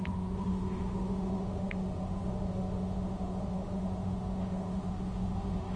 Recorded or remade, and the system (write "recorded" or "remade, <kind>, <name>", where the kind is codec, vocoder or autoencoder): remade, autoencoder, DAC-VAE